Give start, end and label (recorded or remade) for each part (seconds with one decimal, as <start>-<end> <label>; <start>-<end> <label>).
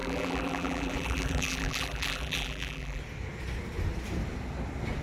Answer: 0.0-3.0 remade; 3.0-5.0 recorded